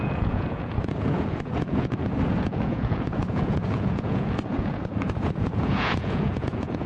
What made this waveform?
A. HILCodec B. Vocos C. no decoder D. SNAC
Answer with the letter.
B